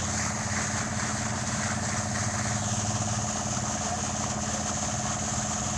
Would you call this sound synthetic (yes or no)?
no